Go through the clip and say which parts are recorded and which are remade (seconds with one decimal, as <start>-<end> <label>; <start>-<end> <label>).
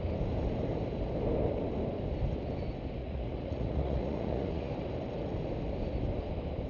0.0-3.0 recorded; 3.0-4.7 remade; 4.7-6.7 recorded